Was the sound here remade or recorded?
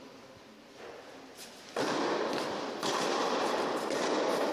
recorded